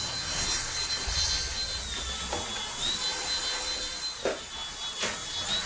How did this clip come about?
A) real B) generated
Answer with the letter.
A